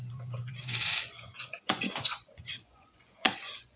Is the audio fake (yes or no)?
yes